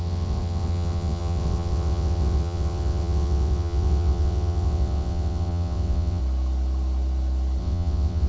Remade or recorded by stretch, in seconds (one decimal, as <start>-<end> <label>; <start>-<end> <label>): 0.0-6.2 remade; 6.2-7.6 recorded; 7.6-8.3 remade